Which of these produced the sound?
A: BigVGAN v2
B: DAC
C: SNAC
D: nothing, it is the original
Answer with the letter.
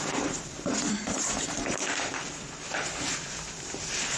A